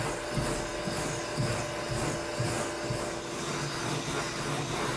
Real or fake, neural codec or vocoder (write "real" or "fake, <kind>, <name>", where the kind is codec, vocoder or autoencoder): real